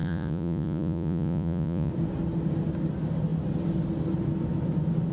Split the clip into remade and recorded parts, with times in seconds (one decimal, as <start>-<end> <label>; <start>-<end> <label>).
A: 0.0-1.9 remade; 1.9-5.1 recorded